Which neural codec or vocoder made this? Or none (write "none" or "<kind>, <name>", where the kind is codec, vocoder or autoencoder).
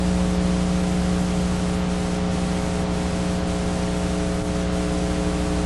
none